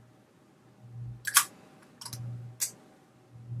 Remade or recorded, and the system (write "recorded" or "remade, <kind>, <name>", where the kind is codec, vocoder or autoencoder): recorded